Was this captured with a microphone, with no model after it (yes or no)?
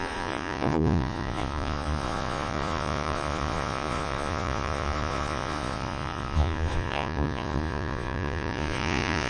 no